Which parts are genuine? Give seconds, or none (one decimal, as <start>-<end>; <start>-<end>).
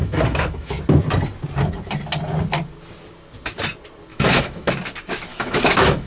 0.7-4.1; 4.7-5.3